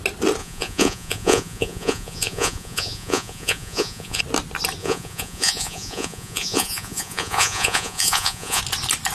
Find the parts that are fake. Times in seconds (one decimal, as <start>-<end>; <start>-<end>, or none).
0.4-4.2; 4.8-8.6